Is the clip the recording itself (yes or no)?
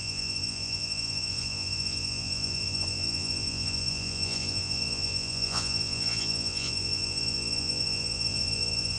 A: no